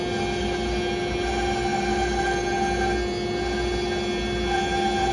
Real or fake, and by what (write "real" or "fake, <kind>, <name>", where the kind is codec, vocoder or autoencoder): real